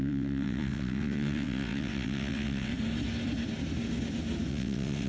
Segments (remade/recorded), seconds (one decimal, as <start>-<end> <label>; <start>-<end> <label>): 0.0-2.7 remade; 2.7-4.5 recorded; 4.5-5.1 remade